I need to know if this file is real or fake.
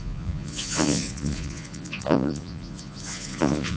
fake